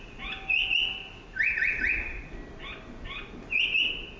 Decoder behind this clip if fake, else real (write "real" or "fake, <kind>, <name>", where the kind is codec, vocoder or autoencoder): real